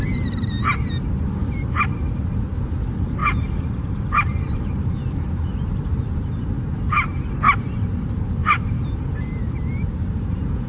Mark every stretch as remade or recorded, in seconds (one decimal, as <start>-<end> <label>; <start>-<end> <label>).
0.0-3.2 recorded; 3.2-7.2 remade; 7.2-8.4 recorded; 8.4-10.7 remade